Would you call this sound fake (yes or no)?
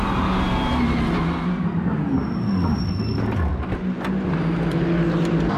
no